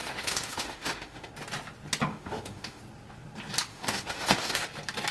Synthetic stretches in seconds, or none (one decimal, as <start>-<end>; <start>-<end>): 0.0-1.3; 2.1-2.8; 3.7-4.6